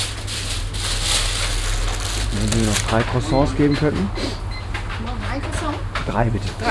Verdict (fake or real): real